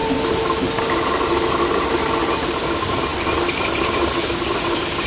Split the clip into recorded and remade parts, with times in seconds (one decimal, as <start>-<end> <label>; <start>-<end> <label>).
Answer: 0.0-5.1 recorded